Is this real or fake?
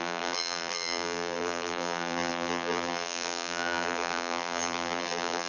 fake